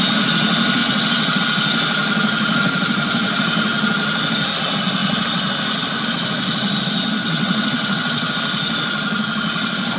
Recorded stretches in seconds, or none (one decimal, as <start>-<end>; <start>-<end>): 0.0-0.8; 1.4-7.2; 8.3-10.0